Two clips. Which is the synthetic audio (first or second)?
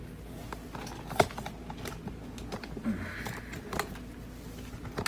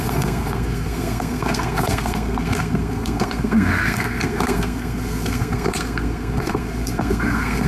second